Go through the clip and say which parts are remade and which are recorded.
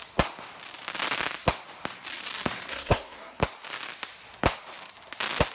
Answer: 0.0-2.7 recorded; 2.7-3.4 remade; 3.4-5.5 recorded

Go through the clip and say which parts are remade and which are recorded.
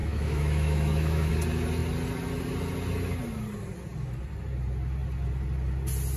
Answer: 0.0-1.3 remade; 1.3-6.2 recorded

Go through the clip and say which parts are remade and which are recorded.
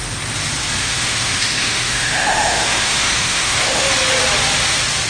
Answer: 0.0-0.8 recorded; 0.8-3.9 remade; 3.9-5.1 recorded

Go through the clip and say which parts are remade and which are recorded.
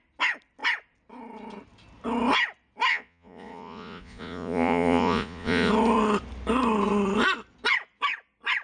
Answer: 0.0-2.9 recorded; 2.9-5.7 remade; 5.7-8.6 recorded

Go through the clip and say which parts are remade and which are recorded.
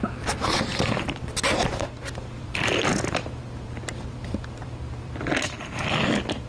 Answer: 0.0-6.5 remade